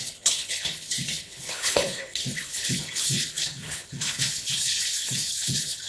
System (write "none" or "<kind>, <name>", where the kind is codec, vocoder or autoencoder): codec, HILCodec